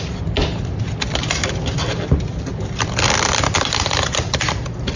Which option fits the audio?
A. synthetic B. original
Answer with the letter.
B